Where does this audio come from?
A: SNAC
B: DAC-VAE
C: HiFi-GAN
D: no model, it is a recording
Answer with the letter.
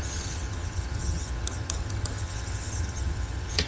C